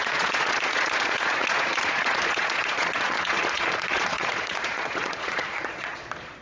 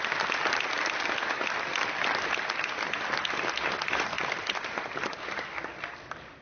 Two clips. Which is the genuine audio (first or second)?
second